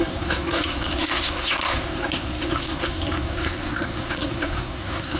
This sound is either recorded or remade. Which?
remade